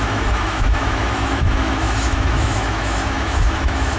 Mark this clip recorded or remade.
remade